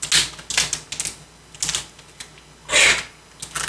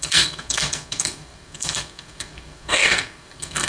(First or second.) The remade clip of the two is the second